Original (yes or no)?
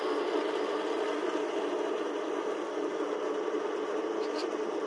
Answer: yes